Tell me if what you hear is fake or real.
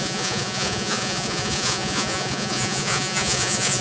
fake